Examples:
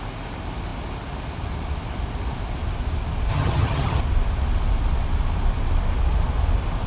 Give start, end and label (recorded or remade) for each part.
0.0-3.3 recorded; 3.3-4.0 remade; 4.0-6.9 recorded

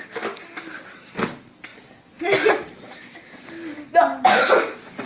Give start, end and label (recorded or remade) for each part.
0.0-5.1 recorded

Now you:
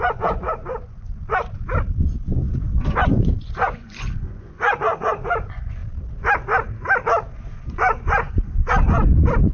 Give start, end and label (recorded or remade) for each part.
0.0-1.4 remade; 1.4-2.0 recorded; 2.0-5.8 remade; 5.8-7.5 recorded; 7.5-9.5 remade

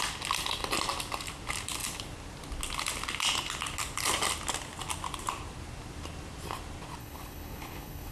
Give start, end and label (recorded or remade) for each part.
0.0-7.0 recorded; 7.0-8.1 remade

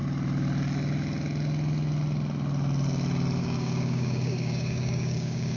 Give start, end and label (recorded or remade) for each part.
0.0-3.4 recorded; 3.4-5.6 remade

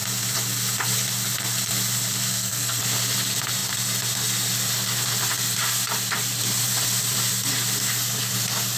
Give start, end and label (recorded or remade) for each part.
0.0-2.3 recorded; 2.3-2.8 remade; 2.8-8.8 recorded

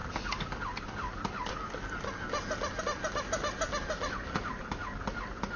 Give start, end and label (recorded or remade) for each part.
0.0-5.6 recorded

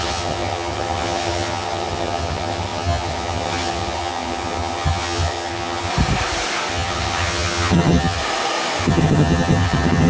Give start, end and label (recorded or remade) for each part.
0.0-5.9 remade; 5.9-6.7 recorded; 6.7-8.2 remade; 8.2-8.8 recorded; 8.8-10.1 remade